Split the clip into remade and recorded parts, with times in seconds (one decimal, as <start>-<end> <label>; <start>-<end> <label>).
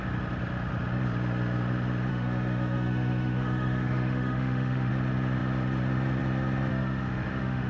0.0-2.1 recorded; 2.1-4.9 remade; 4.9-6.7 recorded; 6.7-7.7 remade